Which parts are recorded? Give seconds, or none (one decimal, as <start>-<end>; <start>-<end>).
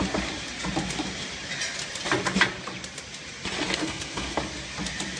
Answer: 0.0-3.8; 4.4-5.2